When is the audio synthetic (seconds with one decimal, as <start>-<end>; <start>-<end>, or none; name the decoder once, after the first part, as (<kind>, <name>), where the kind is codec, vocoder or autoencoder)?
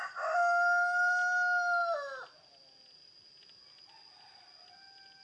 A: none